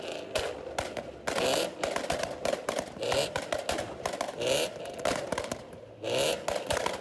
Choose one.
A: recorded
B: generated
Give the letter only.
A